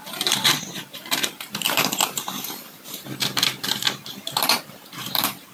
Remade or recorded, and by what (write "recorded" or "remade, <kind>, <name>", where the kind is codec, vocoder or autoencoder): remade, vocoder, BigVGAN v2